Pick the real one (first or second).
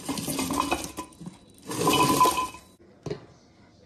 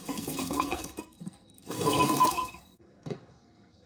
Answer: first